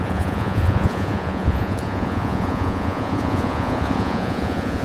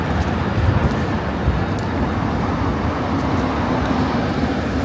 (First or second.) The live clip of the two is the second